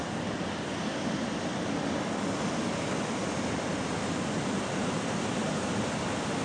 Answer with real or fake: real